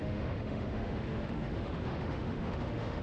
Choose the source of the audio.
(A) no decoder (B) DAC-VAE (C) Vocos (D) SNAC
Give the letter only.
B